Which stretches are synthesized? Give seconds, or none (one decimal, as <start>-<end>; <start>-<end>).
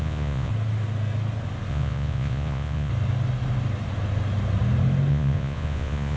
0.0-0.5; 1.7-2.9; 5.1-6.2